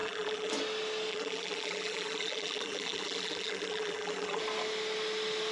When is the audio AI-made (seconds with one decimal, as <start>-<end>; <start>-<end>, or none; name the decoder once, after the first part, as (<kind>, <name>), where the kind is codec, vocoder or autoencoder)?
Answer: 0.0-0.5 (vocoder, BigVGAN v2); 1.1-4.4